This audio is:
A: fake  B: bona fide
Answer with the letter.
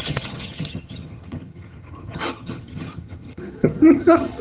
A